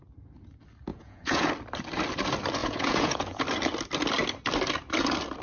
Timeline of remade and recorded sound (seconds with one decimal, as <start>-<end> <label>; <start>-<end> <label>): 0.0-0.9 recorded; 0.9-1.5 remade; 1.5-2.6 recorded; 2.6-3.4 remade; 3.4-5.4 recorded